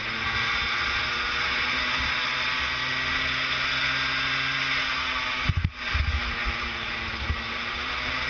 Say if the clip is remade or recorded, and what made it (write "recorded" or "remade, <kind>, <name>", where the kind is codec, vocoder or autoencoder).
recorded